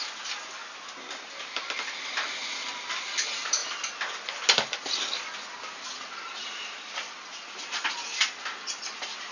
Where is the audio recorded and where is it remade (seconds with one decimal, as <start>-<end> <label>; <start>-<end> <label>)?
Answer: 0.0-9.3 recorded